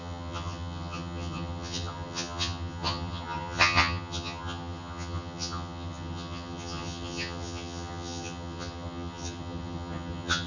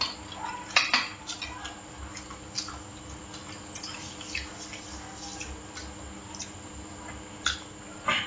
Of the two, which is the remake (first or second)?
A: first